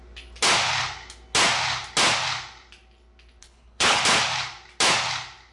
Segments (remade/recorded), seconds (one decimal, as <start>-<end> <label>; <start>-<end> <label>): 0.0-3.4 recorded; 3.4-4.0 remade; 4.0-5.5 recorded